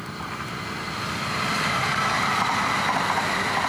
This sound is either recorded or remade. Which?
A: recorded